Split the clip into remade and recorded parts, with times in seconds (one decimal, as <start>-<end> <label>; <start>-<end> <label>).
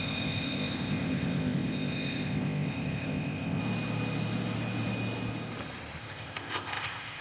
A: 0.0-3.6 remade; 3.6-6.0 recorded; 6.0-7.2 remade